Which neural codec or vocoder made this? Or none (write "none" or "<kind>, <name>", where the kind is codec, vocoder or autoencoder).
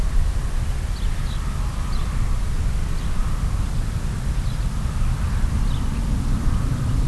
none